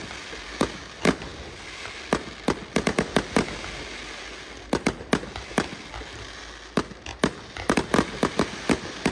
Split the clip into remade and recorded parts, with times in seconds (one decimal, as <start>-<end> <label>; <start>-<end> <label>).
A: 0.0-9.1 recorded